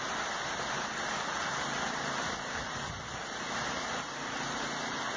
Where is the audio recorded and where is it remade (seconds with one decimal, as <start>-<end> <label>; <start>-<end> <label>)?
0.0-5.2 recorded